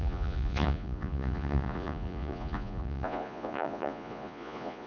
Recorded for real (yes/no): no